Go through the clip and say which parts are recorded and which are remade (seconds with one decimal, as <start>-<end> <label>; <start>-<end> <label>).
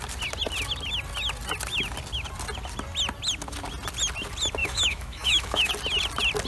0.0-4.6 recorded; 4.6-5.7 remade; 5.7-6.5 recorded